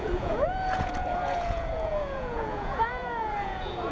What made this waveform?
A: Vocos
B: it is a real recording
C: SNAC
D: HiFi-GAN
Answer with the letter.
A